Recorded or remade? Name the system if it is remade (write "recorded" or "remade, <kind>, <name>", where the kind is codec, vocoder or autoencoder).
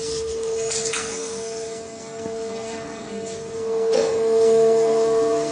remade, codec, SNAC